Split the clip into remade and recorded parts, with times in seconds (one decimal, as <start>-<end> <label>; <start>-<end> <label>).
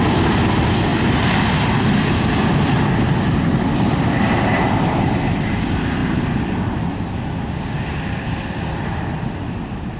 0.0-10.0 recorded